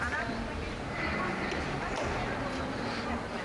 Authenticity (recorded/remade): recorded